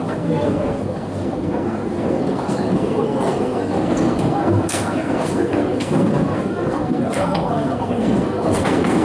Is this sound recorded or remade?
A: remade